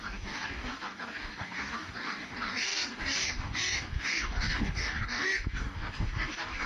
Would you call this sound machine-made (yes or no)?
yes